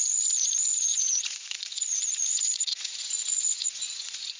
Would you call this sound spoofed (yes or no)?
yes